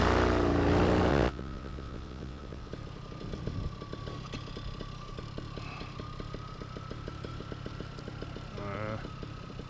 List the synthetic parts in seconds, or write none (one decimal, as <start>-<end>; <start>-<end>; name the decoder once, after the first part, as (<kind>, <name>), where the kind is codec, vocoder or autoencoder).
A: 1.1-2.7 (vocoder, WaveNeXt)